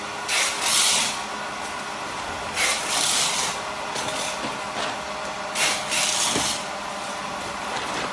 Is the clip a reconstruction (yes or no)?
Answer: no